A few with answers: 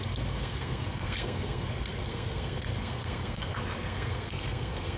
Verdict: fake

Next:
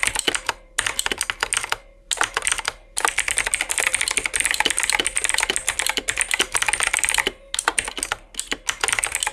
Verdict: real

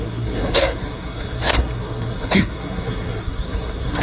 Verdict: fake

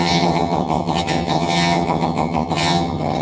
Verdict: fake